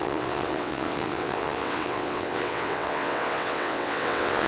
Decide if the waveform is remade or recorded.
remade